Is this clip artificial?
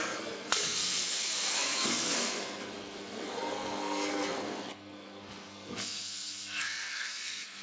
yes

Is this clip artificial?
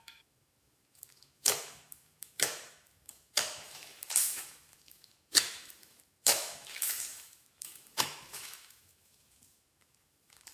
yes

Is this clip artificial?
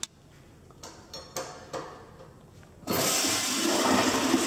no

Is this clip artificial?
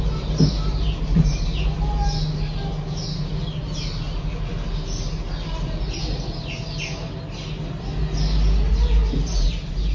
no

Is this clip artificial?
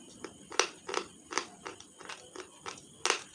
no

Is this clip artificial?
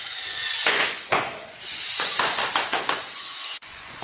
yes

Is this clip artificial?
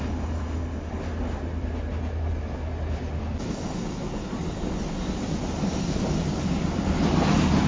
no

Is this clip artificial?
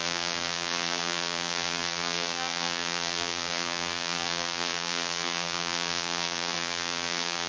yes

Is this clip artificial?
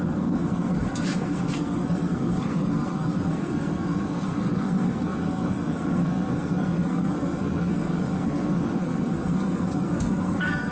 yes